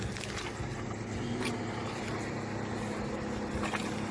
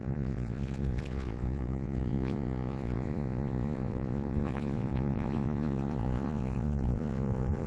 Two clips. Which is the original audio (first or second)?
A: first